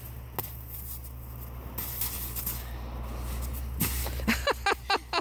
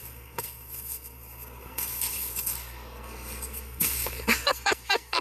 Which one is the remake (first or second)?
second